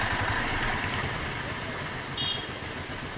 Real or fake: real